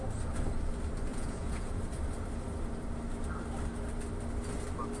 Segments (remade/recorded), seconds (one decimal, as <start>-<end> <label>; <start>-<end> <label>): 0.0-1.1 recorded; 1.1-1.8 remade; 1.8-5.0 recorded